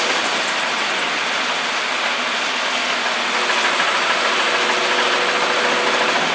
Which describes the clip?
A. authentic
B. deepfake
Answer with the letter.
A